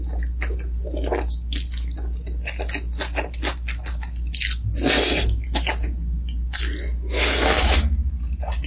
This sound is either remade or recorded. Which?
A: recorded